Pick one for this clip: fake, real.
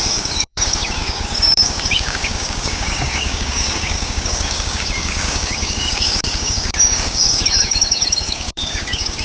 fake